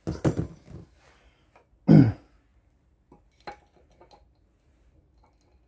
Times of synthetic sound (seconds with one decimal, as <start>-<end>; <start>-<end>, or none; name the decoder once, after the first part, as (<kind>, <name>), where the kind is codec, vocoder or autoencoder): none